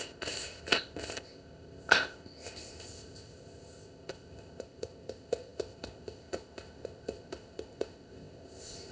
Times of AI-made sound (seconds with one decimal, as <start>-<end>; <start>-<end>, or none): 0.0-8.9